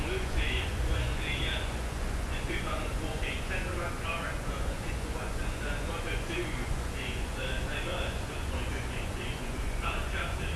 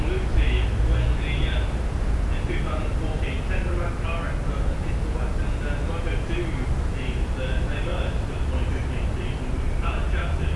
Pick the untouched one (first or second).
second